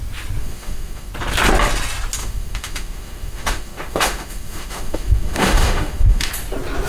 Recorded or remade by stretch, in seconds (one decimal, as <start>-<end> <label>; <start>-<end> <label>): 0.0-0.4 recorded; 0.4-1.1 remade; 1.1-2.2 recorded; 2.2-6.3 remade; 6.3-6.9 recorded